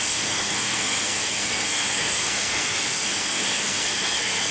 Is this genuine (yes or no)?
no